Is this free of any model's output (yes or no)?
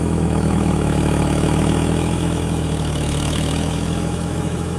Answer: no